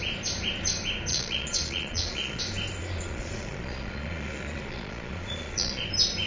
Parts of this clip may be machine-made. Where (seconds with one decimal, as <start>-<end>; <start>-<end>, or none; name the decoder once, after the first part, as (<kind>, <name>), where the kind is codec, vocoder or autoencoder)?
1.1-2.4 (vocoder, Vocos); 2.8-5.8